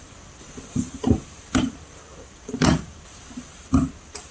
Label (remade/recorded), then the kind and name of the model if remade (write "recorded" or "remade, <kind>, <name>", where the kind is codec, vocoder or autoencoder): remade, vocoder, BigVGAN v2